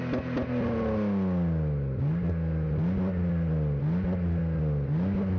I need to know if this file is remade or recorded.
recorded